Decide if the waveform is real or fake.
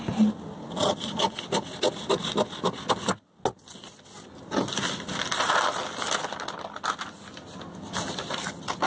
real